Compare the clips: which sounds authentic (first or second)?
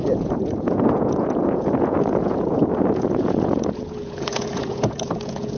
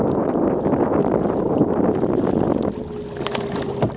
second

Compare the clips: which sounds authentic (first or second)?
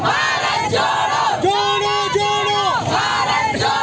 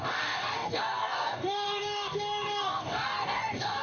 first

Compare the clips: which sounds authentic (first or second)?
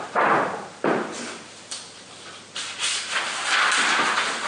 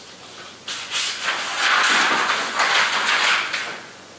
first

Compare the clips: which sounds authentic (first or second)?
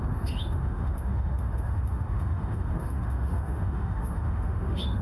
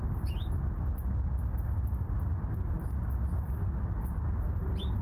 second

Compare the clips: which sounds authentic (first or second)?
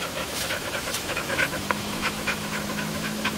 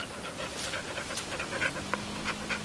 second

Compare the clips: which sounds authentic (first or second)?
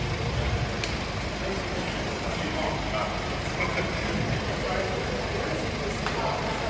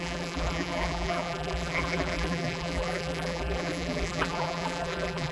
first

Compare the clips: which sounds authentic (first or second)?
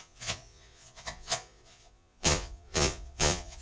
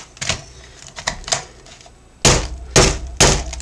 second